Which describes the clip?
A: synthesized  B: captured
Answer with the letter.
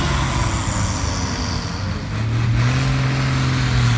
B